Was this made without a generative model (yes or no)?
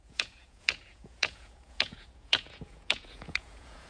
no